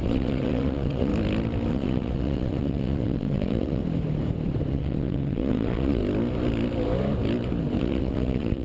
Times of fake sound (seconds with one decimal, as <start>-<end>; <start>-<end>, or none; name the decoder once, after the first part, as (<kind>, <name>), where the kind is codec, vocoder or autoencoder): 0.0-1.1 (vocoder, WaveNeXt); 1.7-3.8; 4.7-6.0; 7.8-8.6